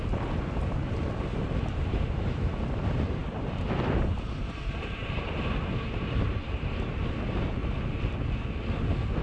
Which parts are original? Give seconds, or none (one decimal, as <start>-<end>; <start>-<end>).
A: 0.0-1.3; 2.4-3.2; 7.0-9.2